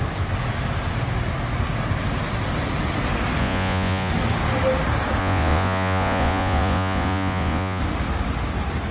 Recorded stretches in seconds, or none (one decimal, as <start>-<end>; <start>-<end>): 0.0-3.4; 4.1-5.2; 7.8-8.9